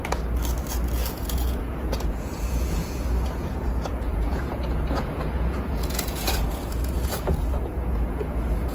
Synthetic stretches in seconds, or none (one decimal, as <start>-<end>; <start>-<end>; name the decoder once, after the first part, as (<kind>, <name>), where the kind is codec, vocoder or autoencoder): 1.1-8.7 (vocoder, Vocos)